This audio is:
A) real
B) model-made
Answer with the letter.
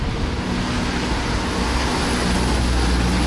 A